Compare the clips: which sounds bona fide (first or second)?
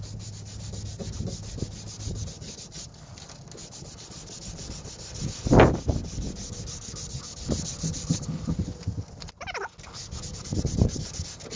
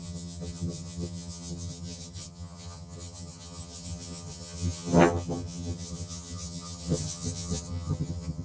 first